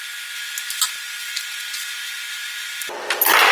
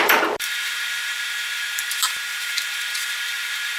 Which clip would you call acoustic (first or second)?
first